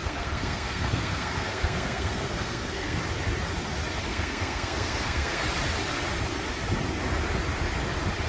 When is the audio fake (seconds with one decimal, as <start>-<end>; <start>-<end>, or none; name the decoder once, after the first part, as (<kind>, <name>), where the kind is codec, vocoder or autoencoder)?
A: 0.0-3.0 (codec, SNAC); 4.1-5.4